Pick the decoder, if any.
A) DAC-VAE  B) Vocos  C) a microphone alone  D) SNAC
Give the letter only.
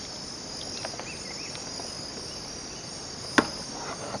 C